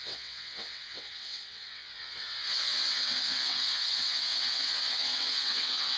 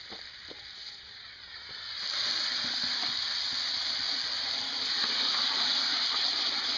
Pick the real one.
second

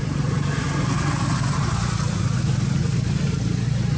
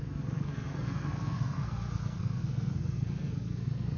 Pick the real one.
first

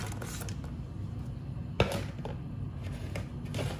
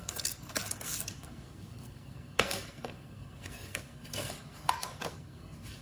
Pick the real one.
first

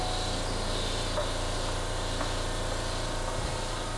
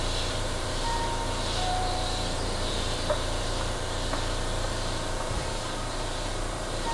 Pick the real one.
first